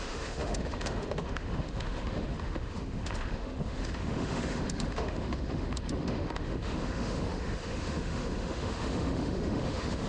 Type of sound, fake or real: fake